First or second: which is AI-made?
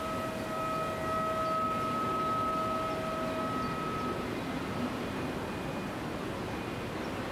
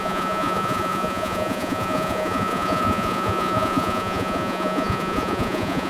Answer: second